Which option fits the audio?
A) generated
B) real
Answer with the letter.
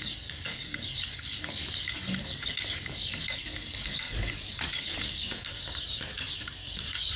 A